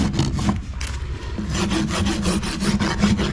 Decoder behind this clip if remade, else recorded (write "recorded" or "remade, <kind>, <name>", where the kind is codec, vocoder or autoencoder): recorded